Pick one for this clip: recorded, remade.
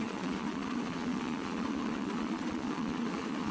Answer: remade